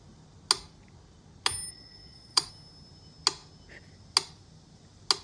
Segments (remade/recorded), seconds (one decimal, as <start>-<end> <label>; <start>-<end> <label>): 0.0-1.7 recorded; 1.7-2.5 remade; 2.5-5.2 recorded